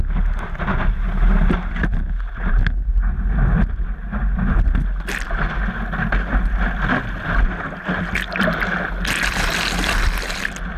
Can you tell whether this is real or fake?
real